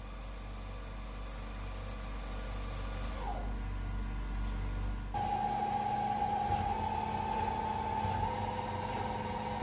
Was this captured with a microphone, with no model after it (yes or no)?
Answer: yes